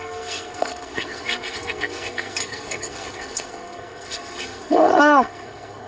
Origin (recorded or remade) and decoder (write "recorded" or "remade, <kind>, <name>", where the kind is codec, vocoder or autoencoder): remade, codec, SNAC